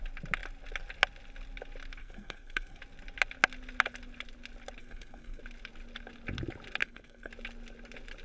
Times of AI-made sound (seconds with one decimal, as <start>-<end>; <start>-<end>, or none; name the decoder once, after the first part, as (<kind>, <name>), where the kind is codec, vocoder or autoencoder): 2.0-2.8 (codec, SNAC); 4.8-5.4; 6.8-7.3